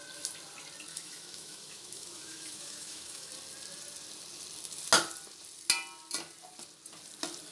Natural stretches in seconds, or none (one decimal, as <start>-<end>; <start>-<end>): 0.0-0.9; 3.3-7.5